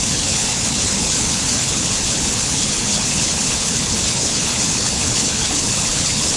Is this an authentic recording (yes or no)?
no